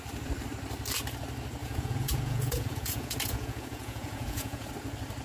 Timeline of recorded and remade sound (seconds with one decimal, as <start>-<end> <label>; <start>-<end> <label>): 0.0-1.6 recorded; 1.6-4.7 remade; 4.7-5.2 recorded